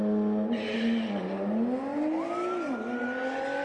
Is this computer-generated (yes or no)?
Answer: no